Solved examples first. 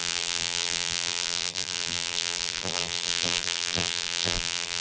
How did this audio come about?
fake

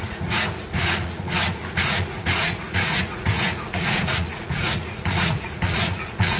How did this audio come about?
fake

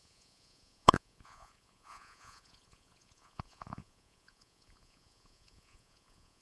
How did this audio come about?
fake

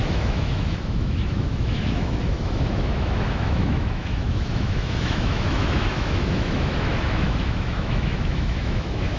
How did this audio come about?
fake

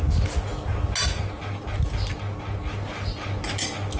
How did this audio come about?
real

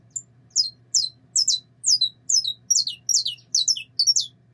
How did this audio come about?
real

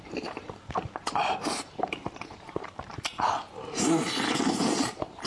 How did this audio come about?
fake